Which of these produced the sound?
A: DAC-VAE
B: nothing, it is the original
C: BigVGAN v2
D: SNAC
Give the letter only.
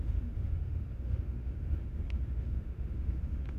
A